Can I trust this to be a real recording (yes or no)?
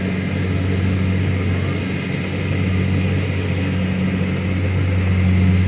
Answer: yes